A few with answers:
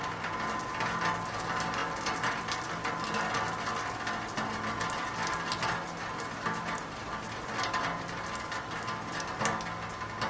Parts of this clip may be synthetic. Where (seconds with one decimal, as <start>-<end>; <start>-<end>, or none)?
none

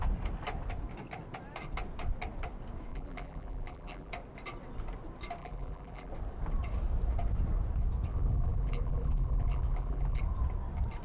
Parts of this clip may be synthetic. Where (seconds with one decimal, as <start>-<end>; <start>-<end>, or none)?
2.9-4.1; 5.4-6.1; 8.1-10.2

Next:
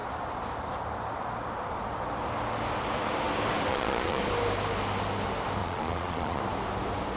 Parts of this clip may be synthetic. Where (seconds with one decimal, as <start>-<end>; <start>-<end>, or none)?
3.7-4.2; 5.6-6.4

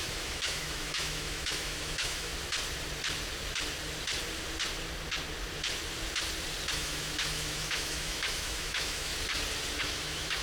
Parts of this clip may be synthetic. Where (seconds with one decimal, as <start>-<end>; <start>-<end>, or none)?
0.0-2.3; 6.7-9.1; 9.8-10.4

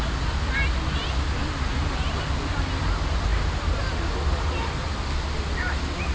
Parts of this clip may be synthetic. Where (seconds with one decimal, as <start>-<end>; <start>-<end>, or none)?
none